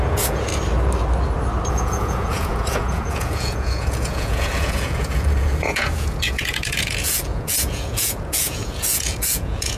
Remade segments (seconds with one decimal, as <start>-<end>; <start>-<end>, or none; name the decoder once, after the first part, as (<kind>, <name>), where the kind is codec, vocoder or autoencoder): 0.0-0.5 (vocoder, Vocos); 1.7-9.8